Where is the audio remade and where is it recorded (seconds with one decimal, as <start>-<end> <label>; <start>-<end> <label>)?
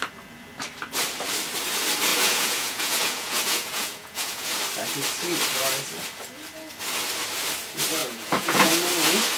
0.0-2.1 recorded; 2.1-4.6 remade; 4.6-8.0 recorded; 8.0-8.7 remade; 8.7-9.4 recorded